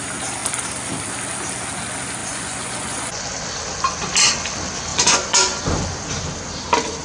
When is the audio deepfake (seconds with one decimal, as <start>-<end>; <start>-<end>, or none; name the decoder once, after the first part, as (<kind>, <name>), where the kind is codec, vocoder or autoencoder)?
2.2-3.2 (vocoder, Vocos); 4.9-5.6